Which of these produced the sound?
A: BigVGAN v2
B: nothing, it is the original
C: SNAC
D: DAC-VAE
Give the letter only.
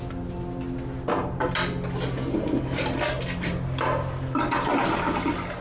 B